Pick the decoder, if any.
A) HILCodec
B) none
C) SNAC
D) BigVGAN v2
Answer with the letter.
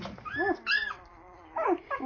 B